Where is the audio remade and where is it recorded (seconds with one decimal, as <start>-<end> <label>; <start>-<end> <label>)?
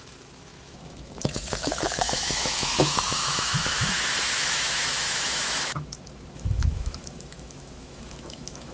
0.0-8.7 remade